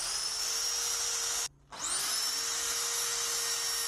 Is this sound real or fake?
real